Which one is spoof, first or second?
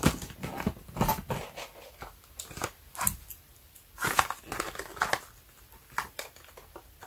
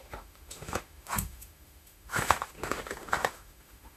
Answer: second